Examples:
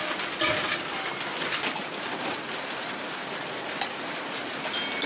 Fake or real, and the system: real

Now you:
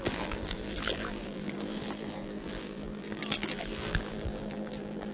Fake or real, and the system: fake, vocoder, BigVGAN v2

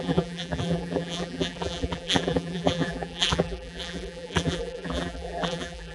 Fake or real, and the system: fake, vocoder, BigVGAN v2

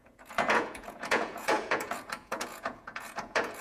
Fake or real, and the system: fake, vocoder, Vocos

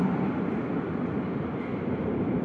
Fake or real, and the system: real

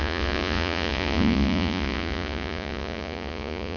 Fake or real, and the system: fake, vocoder, Vocos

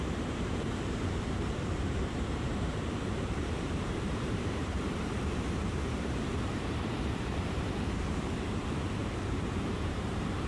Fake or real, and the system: fake, vocoder, BigVGAN v2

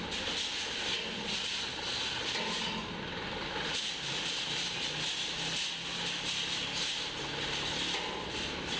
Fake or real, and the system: real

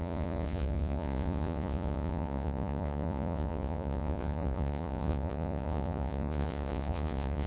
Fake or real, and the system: fake, vocoder, Vocos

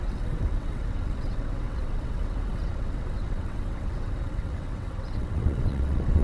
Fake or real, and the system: fake, vocoder, WaveNeXt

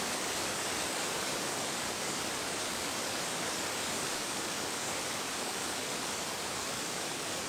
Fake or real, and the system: fake, codec, DAC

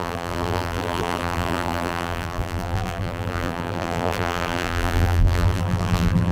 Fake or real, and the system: fake, vocoder, BigVGAN v2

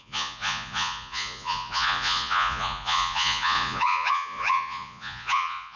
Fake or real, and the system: fake, vocoder, Vocos